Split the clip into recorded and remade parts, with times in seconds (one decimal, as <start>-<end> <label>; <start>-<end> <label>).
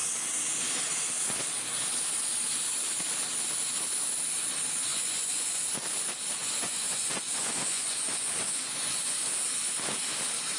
0.0-4.9 recorded; 4.9-5.6 remade; 5.6-6.4 recorded; 6.4-9.3 remade; 9.3-10.6 recorded